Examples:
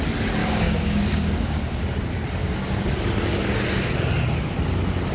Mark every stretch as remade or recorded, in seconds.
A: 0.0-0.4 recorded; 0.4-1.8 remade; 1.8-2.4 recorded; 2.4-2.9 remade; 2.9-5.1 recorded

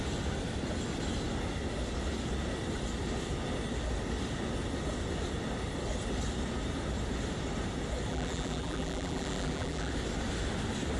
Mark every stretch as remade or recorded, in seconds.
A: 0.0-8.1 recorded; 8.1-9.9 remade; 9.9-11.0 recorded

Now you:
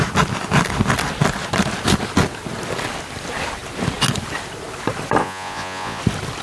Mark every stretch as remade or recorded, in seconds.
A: 0.0-5.2 recorded; 5.2-6.0 remade; 6.0-6.4 recorded